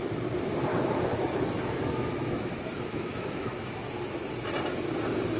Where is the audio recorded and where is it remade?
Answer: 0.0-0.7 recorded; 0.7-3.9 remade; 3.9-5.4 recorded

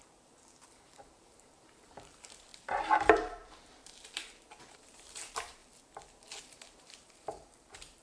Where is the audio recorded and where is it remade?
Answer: 0.0-5.6 remade; 5.6-6.4 recorded; 6.4-8.0 remade

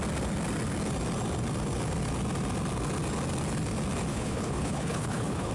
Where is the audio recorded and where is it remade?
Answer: 0.0-4.1 recorded; 4.1-5.5 remade

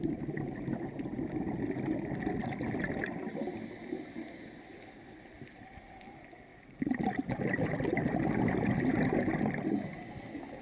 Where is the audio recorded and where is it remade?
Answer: 0.0-10.6 recorded